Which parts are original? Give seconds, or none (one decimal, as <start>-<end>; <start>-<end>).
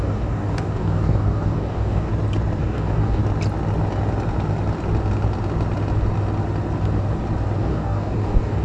2.1-2.6; 3.2-7.6